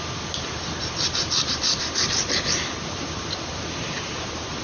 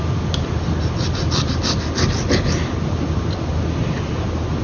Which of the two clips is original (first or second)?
second